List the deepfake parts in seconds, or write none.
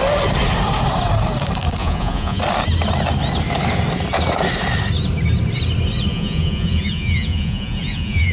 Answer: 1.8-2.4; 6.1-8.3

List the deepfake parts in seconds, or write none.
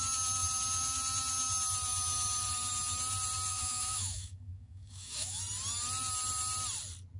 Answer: 3.5-5.4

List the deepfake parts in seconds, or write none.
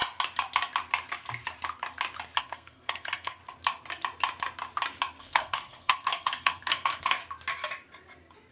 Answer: 2.4-3.4; 5.2-7.2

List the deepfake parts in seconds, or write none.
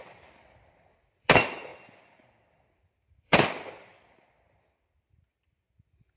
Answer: 0.0-6.2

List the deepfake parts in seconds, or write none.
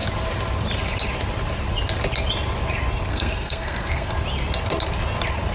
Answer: 3.1-4.1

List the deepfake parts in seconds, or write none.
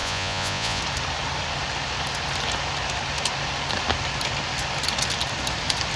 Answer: 0.0-0.8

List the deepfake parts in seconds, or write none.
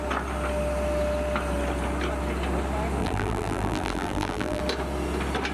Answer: 3.0-4.6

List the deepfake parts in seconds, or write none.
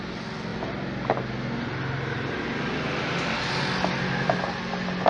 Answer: none